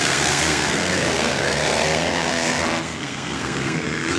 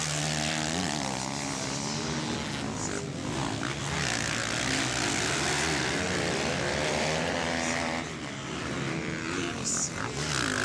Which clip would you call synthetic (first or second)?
first